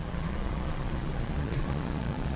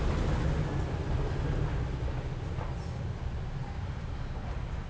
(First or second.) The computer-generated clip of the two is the first